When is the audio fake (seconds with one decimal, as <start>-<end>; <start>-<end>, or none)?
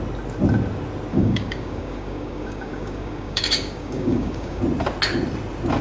1.1-4.6